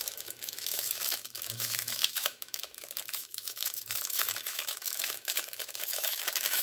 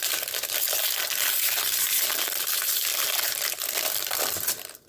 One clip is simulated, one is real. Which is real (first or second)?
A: second